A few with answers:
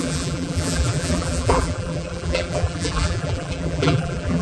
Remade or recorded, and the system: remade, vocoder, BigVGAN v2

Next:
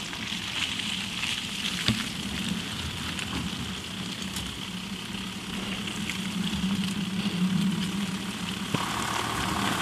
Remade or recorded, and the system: recorded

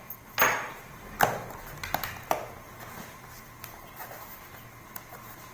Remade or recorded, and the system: recorded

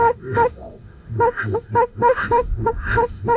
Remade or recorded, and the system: remade, autoencoder, DAC-VAE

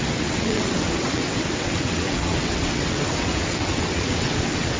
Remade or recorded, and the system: remade, vocoder, WaveNeXt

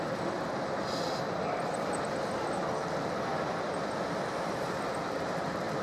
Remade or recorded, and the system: recorded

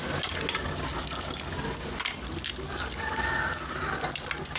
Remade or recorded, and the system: recorded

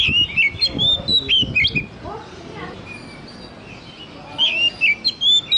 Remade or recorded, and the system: recorded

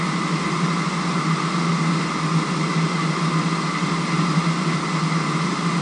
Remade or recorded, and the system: recorded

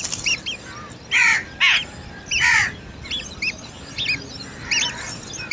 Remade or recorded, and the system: recorded